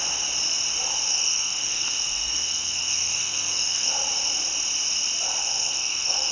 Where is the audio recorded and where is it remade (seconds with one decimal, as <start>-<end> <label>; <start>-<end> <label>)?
0.0-1.1 recorded; 1.1-3.9 remade; 3.9-5.4 recorded; 5.4-6.3 remade